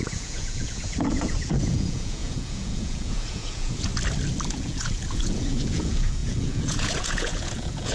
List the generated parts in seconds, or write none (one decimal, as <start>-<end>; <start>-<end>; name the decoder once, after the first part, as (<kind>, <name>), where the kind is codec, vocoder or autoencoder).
0.0-3.9 (vocoder, Vocos); 4.5-7.9